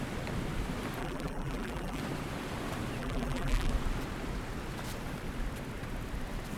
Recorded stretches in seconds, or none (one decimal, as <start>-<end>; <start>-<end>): 0.0-1.0; 2.0-3.0; 3.7-6.6

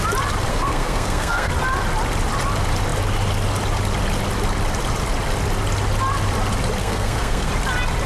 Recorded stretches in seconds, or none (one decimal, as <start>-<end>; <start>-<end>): 0.0-0.5; 1.5-6.8; 7.5-8.1

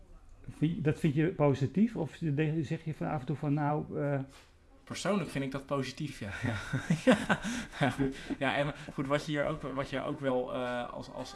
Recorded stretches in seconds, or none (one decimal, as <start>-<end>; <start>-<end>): 0.0-6.1; 10.3-11.4

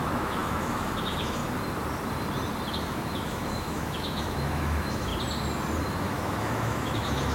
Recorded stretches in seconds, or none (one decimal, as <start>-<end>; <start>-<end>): 1.4-2.7; 5.1-5.9